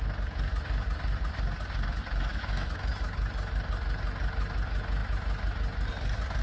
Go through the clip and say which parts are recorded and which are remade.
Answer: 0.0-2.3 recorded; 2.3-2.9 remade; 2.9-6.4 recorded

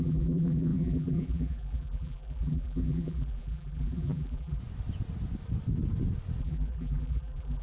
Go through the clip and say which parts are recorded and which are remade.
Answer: 0.0-4.6 remade; 4.6-6.4 recorded; 6.4-7.6 remade

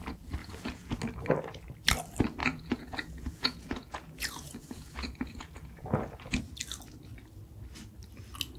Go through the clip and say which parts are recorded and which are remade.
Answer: 0.0-0.4 recorded; 0.4-1.0 remade; 1.0-2.4 recorded; 2.4-6.4 remade; 6.4-8.6 recorded

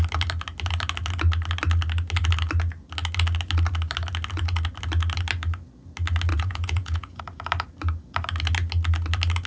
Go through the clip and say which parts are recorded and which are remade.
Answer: 0.0-6.3 recorded; 6.3-7.2 remade; 7.2-9.5 recorded

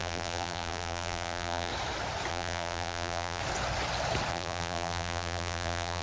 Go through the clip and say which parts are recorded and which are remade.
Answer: 0.0-1.7 remade; 1.7-2.3 recorded; 2.3-3.4 remade; 3.4-4.3 recorded; 4.3-6.0 remade

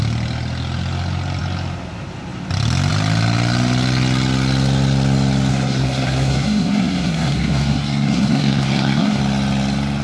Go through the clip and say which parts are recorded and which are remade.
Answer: 0.0-5.5 recorded; 5.5-9.2 remade; 9.2-10.0 recorded